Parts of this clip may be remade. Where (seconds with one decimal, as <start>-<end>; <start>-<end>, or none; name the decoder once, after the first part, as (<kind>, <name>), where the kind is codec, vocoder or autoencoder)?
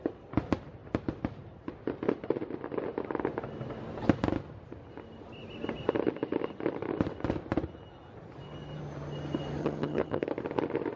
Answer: 9.6-10.2 (vocoder, HiFi-GAN)